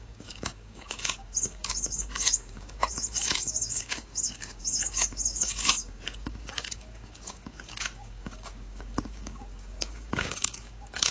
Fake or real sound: fake